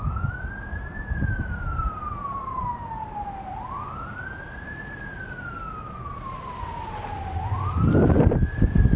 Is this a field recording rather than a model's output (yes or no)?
yes